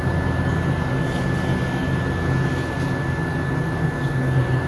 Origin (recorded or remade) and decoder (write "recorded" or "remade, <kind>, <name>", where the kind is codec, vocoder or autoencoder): recorded